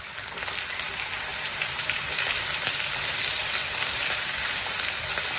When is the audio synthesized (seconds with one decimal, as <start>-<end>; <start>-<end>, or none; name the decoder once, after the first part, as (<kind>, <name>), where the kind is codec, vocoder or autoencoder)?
1.3-2.4 (vocoder, BigVGAN v2); 3.6-4.8